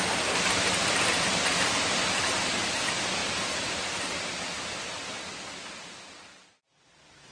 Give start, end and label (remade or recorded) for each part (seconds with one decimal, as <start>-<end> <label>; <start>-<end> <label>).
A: 0.0-7.3 recorded